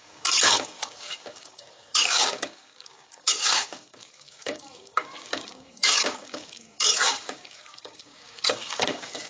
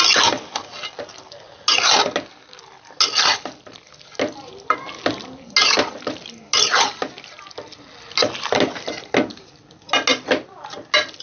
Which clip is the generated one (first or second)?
first